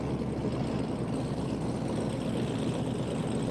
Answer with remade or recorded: recorded